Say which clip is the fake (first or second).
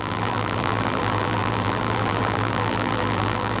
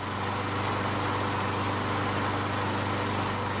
first